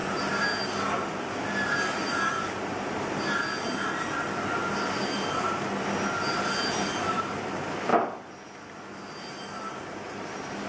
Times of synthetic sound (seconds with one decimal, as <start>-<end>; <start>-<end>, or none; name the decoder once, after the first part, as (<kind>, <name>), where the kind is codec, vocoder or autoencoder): none